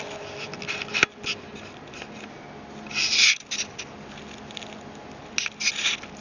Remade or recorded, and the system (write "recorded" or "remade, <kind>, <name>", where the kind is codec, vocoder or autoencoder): recorded